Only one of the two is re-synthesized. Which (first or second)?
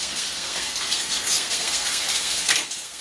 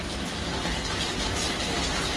first